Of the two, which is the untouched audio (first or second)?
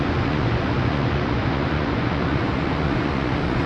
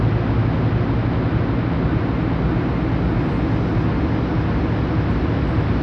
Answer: second